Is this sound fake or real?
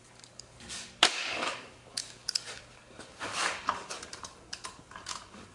fake